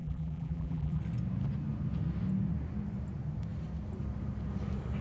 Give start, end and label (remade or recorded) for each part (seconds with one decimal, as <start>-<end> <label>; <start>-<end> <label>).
0.0-1.0 remade; 1.0-5.0 recorded